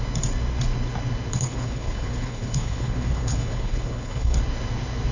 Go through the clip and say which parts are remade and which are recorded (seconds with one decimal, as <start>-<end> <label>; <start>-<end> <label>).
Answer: 0.0-1.3 recorded; 1.3-4.4 remade; 4.4-5.1 recorded